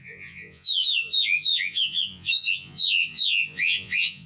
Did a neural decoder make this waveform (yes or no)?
yes